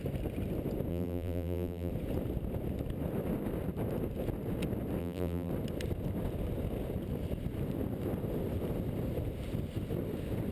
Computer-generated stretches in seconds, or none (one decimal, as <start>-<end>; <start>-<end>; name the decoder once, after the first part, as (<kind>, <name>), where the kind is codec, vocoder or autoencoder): 0.9-1.9 (vocoder, BigVGAN v2); 5.0-5.5